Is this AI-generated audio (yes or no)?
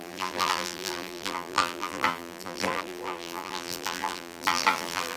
yes